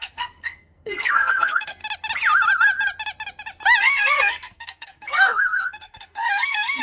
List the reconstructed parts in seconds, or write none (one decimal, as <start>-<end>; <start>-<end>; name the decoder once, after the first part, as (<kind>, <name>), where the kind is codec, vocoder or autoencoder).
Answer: 0.0-1.8 (codec, SNAC); 3.8-6.8